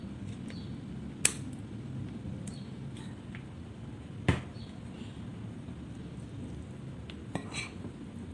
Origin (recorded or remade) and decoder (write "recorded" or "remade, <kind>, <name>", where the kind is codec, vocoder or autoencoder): recorded